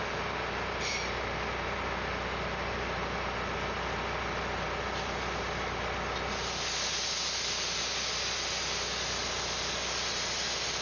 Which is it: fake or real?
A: real